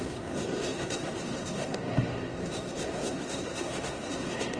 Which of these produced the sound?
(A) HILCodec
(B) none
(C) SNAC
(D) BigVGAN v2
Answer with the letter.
C